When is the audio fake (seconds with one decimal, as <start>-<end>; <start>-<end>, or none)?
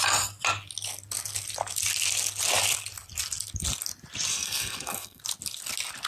4.3-5.2